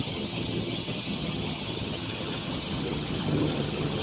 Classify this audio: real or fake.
fake